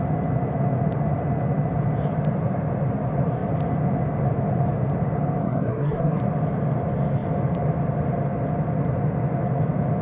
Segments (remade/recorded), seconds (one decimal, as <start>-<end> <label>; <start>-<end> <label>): 0.0-5.4 recorded; 5.4-6.2 remade; 6.2-10.0 recorded